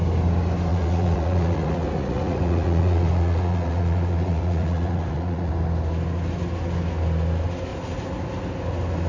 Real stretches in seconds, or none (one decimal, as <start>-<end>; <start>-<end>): 0.0-0.7; 5.5-9.1